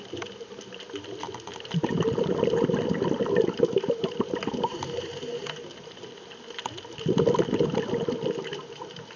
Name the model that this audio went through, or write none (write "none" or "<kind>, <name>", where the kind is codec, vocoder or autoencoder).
none